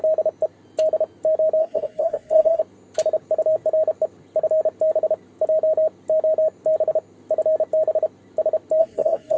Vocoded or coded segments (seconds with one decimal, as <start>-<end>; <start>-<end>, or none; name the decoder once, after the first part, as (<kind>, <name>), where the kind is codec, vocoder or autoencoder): 1.6-2.6 (codec, SNAC); 8.8-9.4